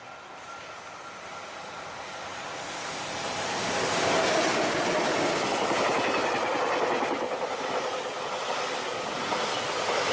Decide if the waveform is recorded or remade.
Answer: recorded